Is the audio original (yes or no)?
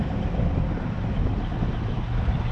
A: yes